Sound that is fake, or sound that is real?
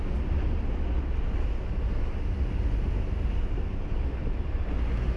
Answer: real